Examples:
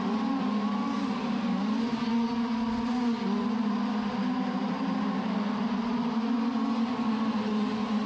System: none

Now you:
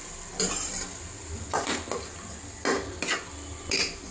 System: none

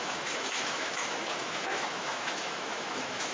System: autoencoder, DAC-VAE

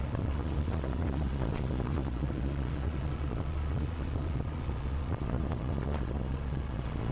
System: vocoder, Vocos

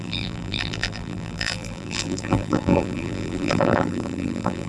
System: vocoder, BigVGAN v2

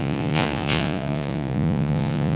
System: vocoder, Vocos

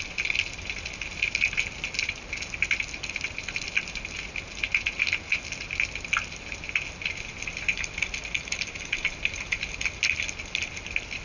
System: none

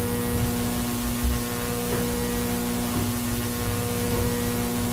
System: none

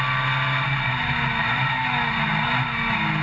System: none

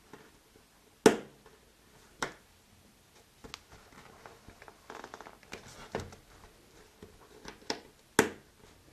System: none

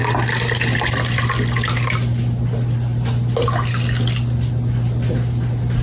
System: none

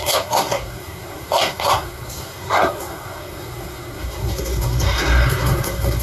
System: codec, SNAC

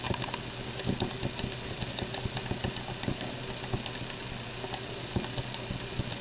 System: none